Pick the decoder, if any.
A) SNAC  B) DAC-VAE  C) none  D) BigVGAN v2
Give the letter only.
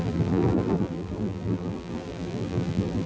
D